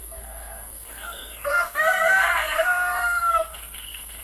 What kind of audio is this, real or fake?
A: fake